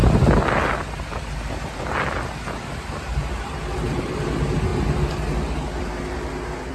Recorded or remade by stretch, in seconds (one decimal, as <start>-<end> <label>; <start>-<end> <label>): 0.0-6.7 recorded